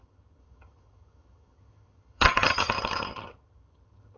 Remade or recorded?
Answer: remade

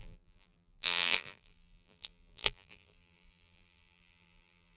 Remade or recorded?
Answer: remade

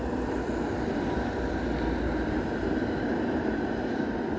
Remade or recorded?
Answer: remade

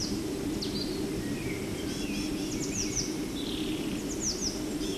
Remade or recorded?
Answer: recorded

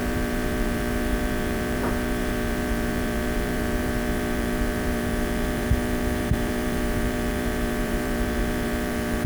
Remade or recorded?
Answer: remade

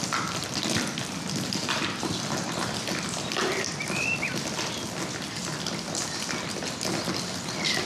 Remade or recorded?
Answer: recorded